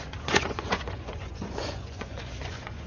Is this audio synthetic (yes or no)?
yes